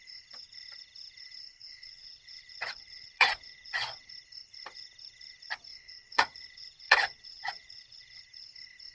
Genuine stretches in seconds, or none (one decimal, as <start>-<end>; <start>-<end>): 0.0-1.6; 4.0-5.7; 8.2-8.9